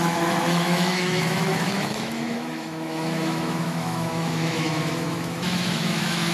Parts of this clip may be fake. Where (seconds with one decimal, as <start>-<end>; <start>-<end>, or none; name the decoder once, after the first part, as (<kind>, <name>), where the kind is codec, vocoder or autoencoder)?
0.0-6.3 (autoencoder, DAC-VAE)